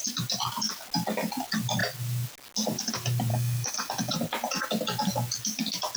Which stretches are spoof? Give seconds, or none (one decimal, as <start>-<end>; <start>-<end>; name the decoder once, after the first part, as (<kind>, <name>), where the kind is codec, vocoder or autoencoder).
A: 3.3-4.1 (codec, DAC)